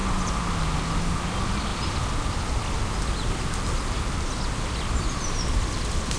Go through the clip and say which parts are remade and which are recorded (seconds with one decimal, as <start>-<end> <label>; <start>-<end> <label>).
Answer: 0.0-6.2 recorded